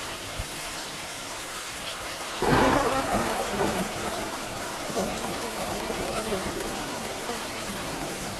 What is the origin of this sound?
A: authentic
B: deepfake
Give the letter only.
B